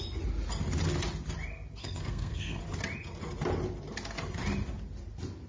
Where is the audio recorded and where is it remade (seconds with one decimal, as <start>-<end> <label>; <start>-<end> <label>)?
0.0-1.8 recorded; 1.8-2.6 remade; 2.6-5.5 recorded